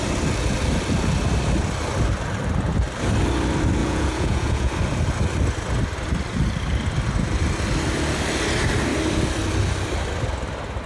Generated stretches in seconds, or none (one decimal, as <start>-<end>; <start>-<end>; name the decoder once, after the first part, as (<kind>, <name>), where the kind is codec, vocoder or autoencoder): 3.8-4.7 (vocoder, Vocos)